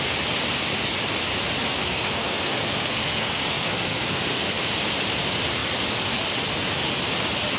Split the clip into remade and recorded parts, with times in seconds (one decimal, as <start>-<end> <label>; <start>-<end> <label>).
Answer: 0.0-1.8 recorded; 1.8-4.6 remade; 4.6-7.6 recorded

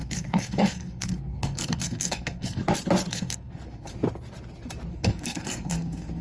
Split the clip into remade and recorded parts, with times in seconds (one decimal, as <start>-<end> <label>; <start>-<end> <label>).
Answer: 0.0-2.6 remade; 2.6-3.1 recorded; 3.1-3.9 remade; 3.9-4.9 recorded; 4.9-6.2 remade

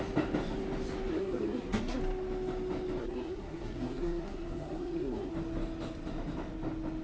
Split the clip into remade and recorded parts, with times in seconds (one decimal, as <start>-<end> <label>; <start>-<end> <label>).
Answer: 0.0-1.1 recorded; 1.1-2.0 remade; 2.0-3.0 recorded; 3.0-5.3 remade; 5.3-7.0 recorded

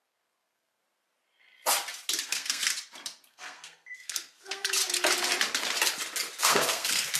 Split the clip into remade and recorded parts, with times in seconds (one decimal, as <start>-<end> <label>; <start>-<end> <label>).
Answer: 0.0-0.8 remade; 0.8-2.2 recorded; 2.2-2.7 remade; 2.7-3.3 recorded; 3.3-4.8 remade; 4.8-6.4 recorded; 6.4-7.2 remade

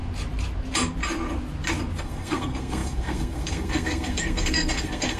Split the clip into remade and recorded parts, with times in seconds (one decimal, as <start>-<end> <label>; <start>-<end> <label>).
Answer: 0.0-2.0 recorded; 2.0-5.2 remade

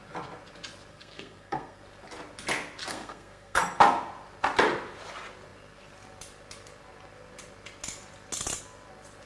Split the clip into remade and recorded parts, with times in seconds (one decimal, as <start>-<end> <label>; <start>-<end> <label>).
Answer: 0.0-0.9 recorded; 0.9-1.8 remade; 1.8-2.9 recorded; 2.9-3.6 remade; 3.6-9.3 recorded

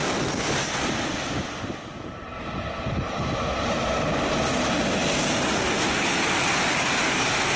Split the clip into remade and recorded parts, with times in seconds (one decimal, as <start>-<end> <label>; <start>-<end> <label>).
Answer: 0.0-7.6 recorded

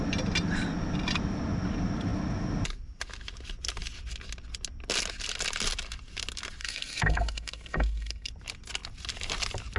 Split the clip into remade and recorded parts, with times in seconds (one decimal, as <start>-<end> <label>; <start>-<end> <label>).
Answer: 0.0-6.6 recorded; 6.6-8.3 remade; 8.3-9.8 recorded